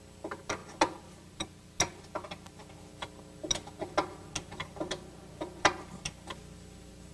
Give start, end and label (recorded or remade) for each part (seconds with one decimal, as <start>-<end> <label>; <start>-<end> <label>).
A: 0.0-7.1 recorded